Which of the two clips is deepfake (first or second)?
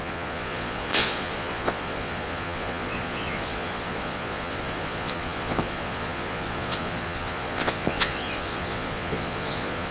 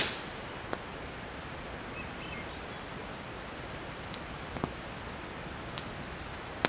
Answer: first